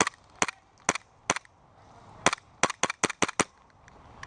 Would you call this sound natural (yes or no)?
yes